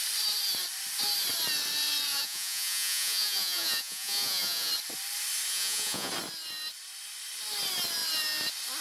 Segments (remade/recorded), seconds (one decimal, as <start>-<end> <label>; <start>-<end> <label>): 0.0-2.1 recorded; 2.1-4.7 remade; 4.7-5.5 recorded; 5.5-6.1 remade; 6.1-8.8 recorded